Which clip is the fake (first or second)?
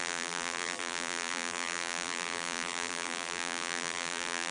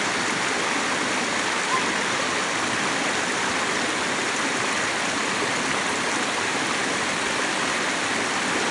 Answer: first